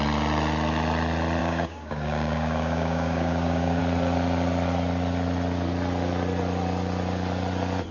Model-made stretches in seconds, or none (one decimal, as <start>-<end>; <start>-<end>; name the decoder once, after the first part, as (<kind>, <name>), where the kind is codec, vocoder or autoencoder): 1.4-3.8 (codec, DAC)